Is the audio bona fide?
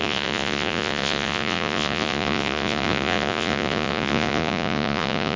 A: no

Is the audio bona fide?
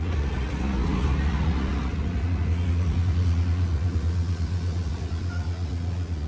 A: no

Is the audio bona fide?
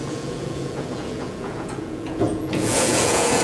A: no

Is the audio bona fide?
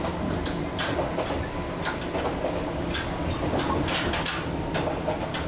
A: yes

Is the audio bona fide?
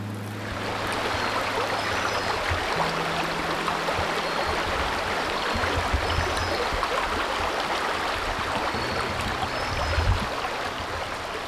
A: yes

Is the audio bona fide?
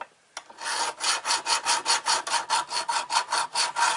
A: yes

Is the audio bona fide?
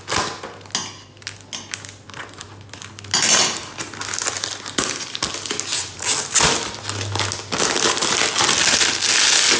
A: yes